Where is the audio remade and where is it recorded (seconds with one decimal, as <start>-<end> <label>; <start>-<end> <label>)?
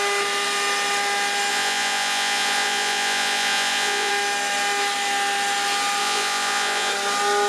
0.0-1.5 recorded; 1.5-4.1 remade; 4.1-6.0 recorded; 6.0-6.9 remade; 6.9-7.5 recorded